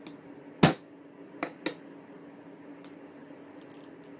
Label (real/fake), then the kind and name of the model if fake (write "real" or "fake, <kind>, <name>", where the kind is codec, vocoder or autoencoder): real